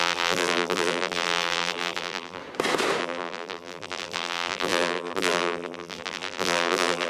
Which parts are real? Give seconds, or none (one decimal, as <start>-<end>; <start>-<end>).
2.4-3.0